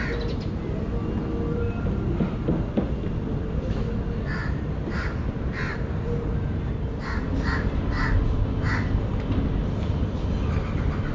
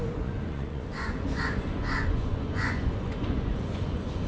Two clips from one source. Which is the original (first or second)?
first